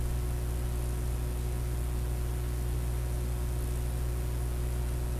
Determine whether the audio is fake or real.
real